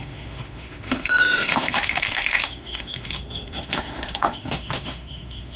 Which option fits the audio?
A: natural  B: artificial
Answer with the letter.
B